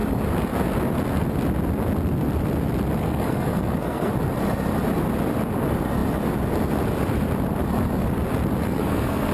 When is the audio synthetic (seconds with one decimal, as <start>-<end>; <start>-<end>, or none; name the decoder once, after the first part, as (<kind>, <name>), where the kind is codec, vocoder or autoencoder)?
3.0-4.1 (codec, SNAC); 8.6-9.3